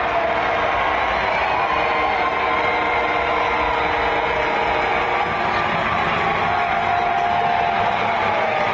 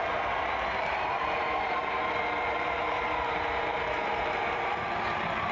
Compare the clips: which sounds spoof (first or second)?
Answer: second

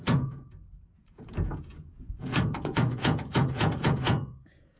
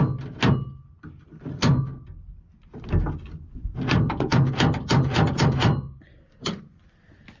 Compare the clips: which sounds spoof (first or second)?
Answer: first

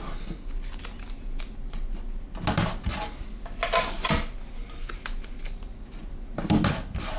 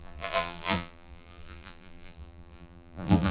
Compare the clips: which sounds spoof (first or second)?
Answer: second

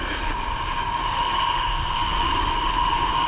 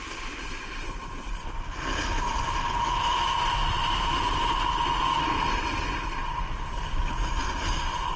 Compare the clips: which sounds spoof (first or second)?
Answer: first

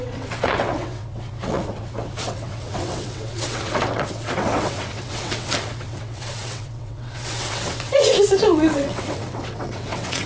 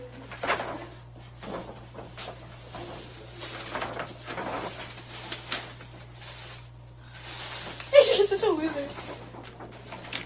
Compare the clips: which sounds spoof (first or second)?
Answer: first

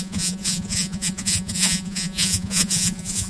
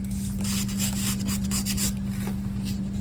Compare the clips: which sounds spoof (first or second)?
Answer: first